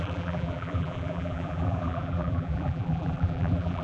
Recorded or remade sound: remade